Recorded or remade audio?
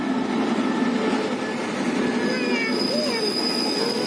recorded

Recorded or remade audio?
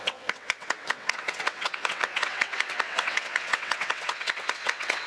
remade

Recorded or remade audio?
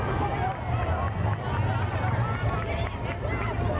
recorded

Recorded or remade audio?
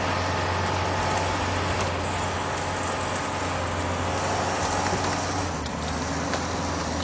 recorded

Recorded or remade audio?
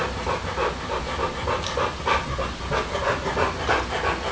recorded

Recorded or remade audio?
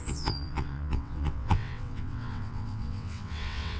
remade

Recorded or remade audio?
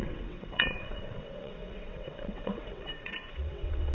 remade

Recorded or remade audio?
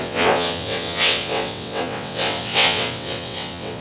remade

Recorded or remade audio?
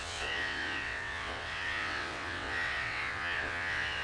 remade